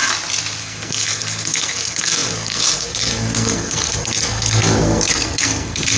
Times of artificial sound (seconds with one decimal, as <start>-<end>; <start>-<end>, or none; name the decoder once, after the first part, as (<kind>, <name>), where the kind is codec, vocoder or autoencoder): 0.6-6.0 (codec, SNAC)